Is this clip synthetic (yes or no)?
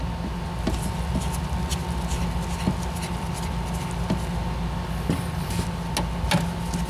no